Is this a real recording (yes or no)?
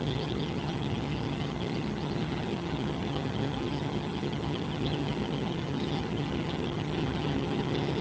no